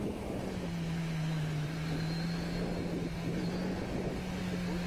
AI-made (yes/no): no